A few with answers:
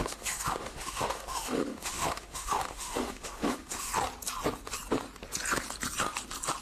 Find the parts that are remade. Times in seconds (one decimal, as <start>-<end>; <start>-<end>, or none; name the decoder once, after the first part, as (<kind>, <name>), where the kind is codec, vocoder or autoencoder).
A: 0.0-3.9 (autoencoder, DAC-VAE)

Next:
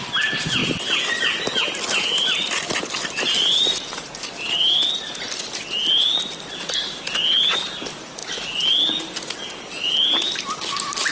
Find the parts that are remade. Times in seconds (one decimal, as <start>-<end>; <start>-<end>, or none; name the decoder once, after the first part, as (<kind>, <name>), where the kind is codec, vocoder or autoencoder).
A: none

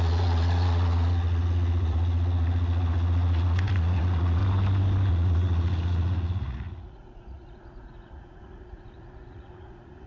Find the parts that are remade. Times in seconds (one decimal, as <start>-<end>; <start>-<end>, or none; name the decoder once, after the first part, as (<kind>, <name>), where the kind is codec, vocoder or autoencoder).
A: 0.0-4.4 (vocoder, Vocos); 5.1-10.1